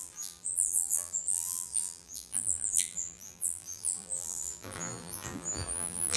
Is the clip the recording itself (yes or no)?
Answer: no